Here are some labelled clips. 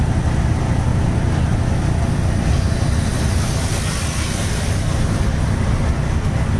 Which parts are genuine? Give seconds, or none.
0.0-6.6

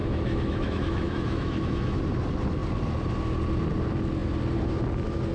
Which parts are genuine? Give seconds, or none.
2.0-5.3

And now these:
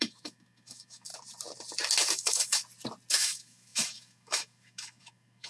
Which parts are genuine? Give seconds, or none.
1.1-2.0; 2.6-3.1